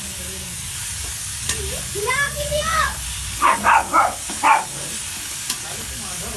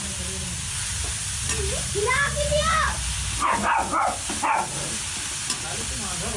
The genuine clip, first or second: second